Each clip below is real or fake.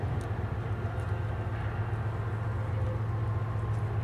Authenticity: real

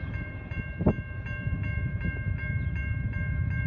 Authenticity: fake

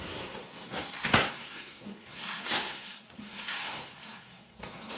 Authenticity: fake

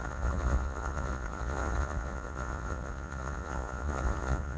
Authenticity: fake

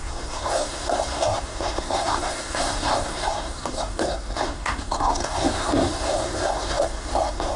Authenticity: fake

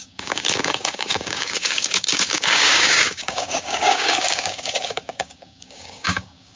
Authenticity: fake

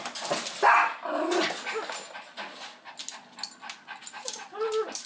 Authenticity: real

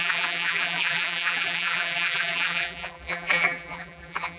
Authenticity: fake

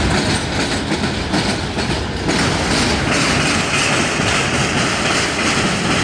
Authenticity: real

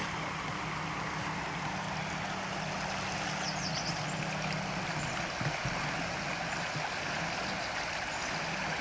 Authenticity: real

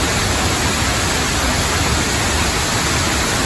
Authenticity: real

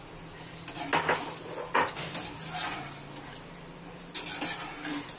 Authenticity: real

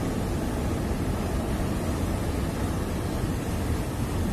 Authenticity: real